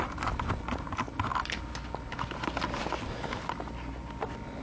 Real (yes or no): yes